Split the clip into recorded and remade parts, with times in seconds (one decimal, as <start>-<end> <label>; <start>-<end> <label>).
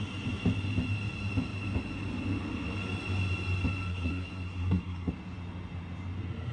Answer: 0.0-3.9 recorded; 3.9-5.1 remade; 5.1-6.5 recorded